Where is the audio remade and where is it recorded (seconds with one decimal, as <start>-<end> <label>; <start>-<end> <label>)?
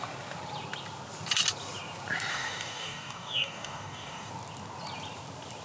0.0-2.3 recorded; 2.3-4.3 remade; 4.3-5.6 recorded